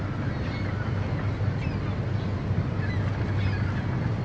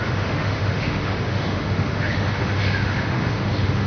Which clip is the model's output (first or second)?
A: second